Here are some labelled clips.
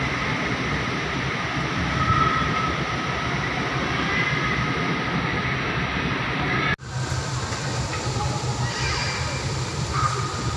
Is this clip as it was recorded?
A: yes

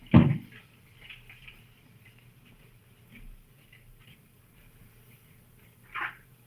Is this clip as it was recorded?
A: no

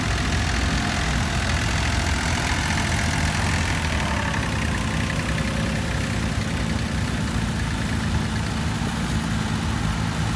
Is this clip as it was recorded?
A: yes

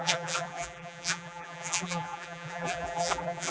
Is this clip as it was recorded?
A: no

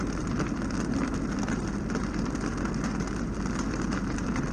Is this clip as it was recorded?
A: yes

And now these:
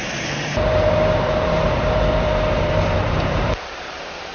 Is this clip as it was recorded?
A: no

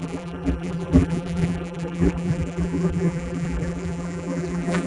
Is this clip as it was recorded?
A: no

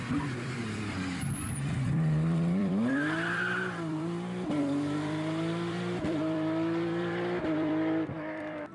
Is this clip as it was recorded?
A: no